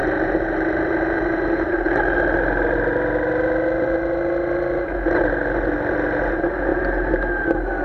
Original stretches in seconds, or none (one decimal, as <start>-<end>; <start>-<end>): 2.0-6.7; 7.2-7.8